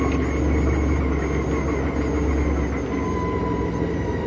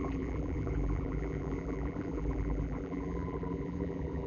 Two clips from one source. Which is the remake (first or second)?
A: second